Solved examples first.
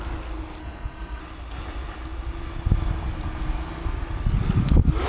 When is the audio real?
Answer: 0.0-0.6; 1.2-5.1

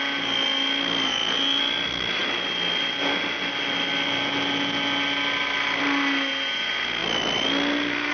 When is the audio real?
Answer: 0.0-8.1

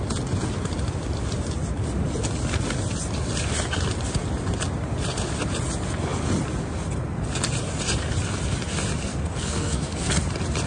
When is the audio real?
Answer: 0.0-9.1; 10.1-10.7